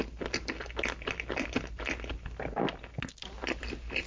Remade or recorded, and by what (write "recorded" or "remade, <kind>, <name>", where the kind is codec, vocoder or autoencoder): recorded